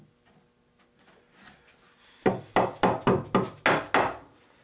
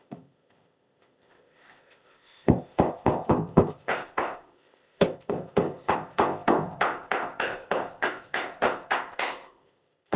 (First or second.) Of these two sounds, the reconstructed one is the second